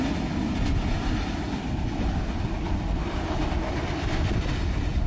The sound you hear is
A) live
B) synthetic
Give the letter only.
A